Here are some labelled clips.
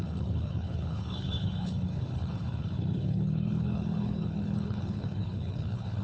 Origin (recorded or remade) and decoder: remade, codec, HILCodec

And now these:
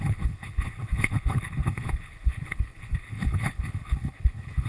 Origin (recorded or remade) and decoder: remade, codec, HILCodec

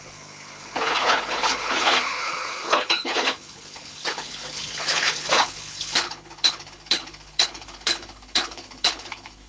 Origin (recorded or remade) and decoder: remade, codec, HILCodec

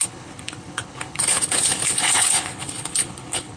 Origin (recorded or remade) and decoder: remade, codec, HILCodec